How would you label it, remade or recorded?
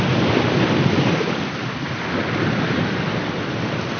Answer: recorded